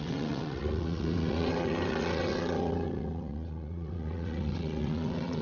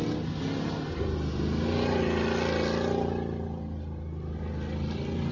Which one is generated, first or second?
first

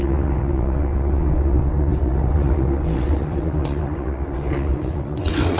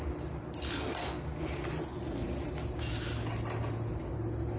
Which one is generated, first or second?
first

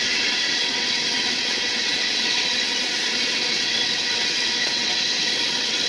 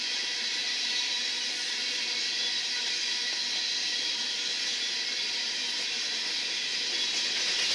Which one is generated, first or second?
first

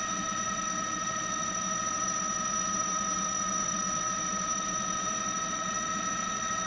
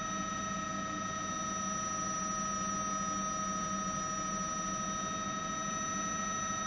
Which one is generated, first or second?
first